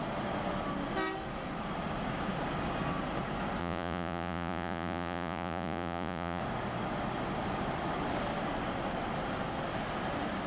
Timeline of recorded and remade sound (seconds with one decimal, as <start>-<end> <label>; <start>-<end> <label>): 0.0-3.6 recorded; 3.6-6.4 remade; 6.4-10.5 recorded

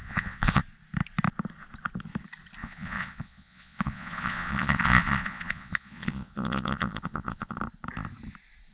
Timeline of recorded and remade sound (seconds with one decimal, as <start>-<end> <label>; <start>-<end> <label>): 0.0-0.6 remade; 0.6-2.6 recorded; 2.6-7.6 remade; 7.6-8.7 recorded

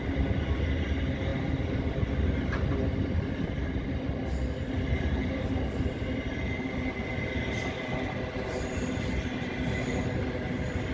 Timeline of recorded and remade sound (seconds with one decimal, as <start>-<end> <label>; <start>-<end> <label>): 0.0-10.9 recorded